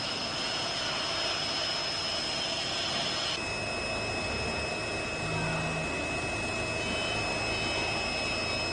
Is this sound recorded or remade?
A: recorded